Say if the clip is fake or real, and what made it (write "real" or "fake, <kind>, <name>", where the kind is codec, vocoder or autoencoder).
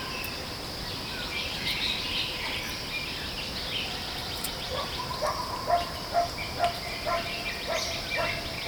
real